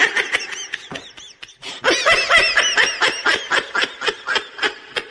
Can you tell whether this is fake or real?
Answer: real